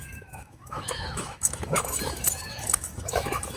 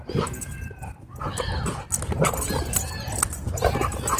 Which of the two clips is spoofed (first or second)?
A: first